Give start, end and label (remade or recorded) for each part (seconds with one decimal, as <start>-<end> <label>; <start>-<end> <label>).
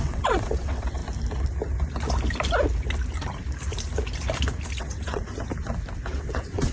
0.0-1.0 remade; 1.0-4.8 recorded; 4.8-5.3 remade; 5.3-6.1 recorded; 6.1-6.7 remade